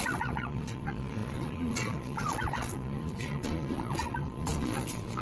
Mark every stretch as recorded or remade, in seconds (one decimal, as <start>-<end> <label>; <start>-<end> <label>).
0.0-5.2 remade